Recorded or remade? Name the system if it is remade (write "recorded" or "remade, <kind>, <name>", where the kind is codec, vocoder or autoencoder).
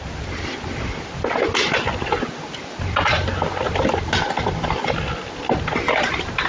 recorded